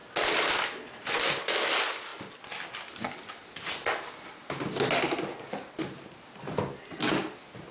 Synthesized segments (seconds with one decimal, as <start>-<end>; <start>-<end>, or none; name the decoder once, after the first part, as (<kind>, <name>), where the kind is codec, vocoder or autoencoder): none